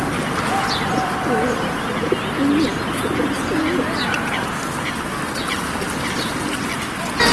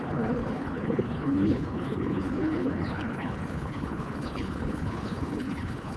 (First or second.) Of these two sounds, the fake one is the second